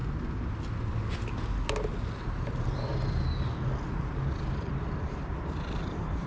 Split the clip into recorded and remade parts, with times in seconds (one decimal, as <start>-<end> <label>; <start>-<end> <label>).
0.0-2.2 recorded; 2.2-2.9 remade; 2.9-4.5 recorded; 4.5-6.3 remade